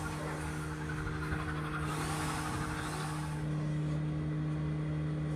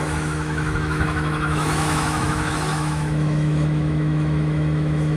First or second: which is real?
first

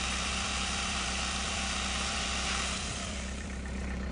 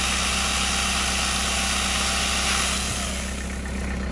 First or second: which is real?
second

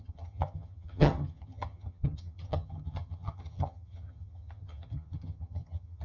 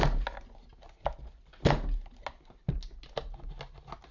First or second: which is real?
second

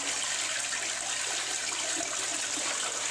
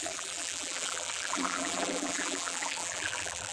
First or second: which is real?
first